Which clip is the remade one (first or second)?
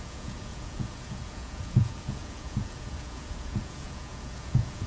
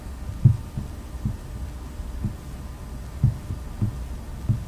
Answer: first